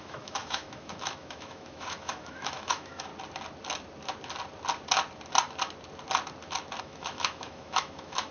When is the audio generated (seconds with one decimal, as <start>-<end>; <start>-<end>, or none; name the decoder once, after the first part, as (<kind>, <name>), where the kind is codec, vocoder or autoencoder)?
0.0-3.1 (autoencoder, DAC-VAE); 6.8-8.3